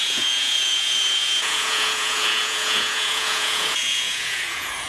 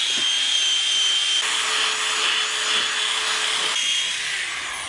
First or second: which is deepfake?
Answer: first